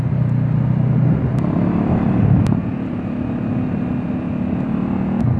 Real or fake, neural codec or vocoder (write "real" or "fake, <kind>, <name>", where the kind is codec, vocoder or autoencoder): real